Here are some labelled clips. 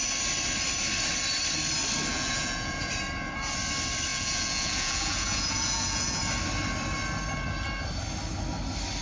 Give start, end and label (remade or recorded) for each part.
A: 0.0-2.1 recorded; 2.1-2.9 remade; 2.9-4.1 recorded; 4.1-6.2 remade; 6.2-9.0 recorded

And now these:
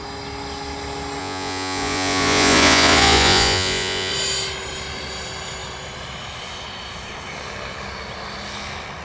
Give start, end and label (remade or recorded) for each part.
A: 0.0-1.2 recorded; 1.2-4.1 remade; 4.1-9.0 recorded

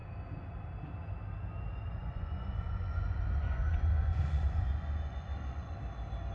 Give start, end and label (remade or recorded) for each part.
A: 0.0-2.0 recorded; 2.0-5.8 remade; 5.8-6.3 recorded

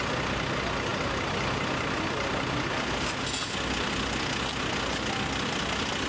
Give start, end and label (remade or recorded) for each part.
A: 0.0-6.1 recorded

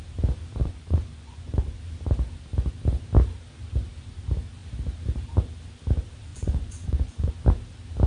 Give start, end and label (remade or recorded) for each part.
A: 0.0-0.6 recorded; 0.6-1.8 remade; 1.8-6.3 recorded; 6.3-7.3 remade; 7.3-8.1 recorded

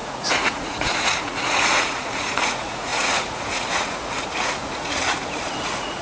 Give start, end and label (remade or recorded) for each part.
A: 0.0-6.0 remade